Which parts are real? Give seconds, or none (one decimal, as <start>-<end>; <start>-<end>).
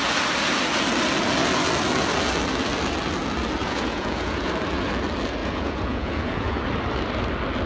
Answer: 0.0-3.6; 4.5-5.4; 6.6-7.7